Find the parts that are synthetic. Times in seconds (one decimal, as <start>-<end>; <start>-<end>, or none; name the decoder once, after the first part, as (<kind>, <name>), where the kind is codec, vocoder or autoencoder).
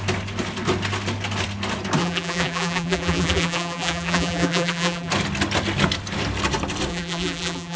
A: 2.0-5.1 (vocoder, BigVGAN v2); 6.9-7.8